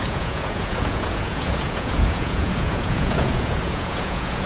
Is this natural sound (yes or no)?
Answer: no